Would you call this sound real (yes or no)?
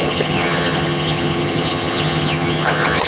no